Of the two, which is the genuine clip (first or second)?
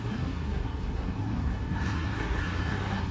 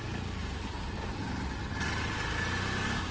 second